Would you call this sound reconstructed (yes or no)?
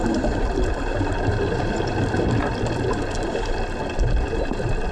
no